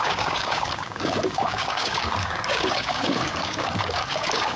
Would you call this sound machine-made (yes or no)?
yes